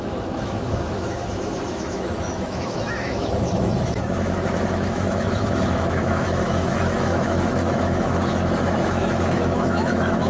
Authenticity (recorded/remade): remade